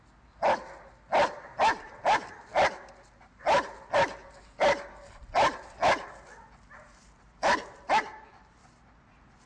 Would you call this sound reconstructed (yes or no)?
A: no